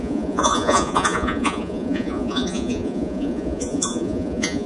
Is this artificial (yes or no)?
yes